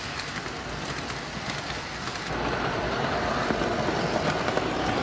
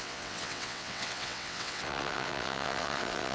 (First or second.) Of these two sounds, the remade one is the second